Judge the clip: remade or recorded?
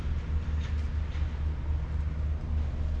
recorded